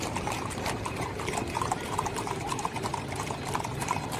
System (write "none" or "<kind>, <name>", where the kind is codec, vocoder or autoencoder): vocoder, BigVGAN v2